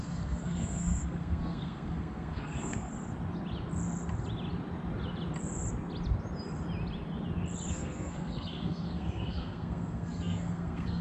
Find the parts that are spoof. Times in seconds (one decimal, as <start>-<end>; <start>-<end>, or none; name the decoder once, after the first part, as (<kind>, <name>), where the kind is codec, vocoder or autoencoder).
0.0-2.9 (codec, SNAC); 7.7-11.0